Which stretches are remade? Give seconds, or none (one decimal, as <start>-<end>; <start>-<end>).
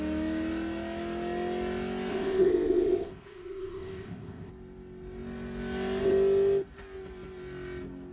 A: 2.1-4.5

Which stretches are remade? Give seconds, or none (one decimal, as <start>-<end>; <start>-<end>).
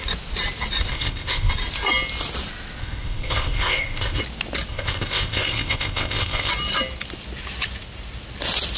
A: 0.9-1.5; 2.8-4.2; 4.7-6.5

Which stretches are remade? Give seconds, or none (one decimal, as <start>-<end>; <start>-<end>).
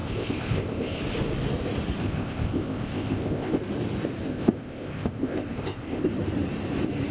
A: 0.0-1.0; 2.0-3.6; 4.3-6.1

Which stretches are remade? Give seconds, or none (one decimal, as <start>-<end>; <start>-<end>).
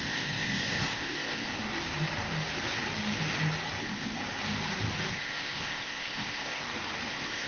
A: 0.0-1.5; 3.8-4.2; 5.1-6.6; 7.1-7.5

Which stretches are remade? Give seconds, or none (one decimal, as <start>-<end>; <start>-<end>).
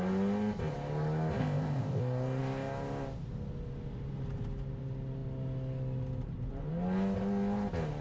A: 1.4-2.0